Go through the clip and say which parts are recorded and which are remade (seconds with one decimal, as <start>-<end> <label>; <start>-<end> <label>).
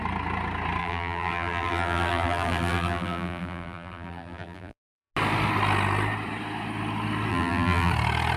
0.0-0.8 recorded; 0.8-5.1 remade; 5.1-7.3 recorded; 7.3-7.9 remade; 7.9-8.4 recorded